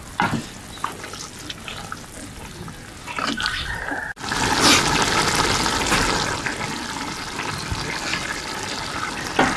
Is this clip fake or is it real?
real